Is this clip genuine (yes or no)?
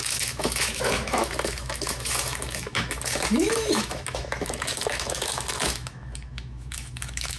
no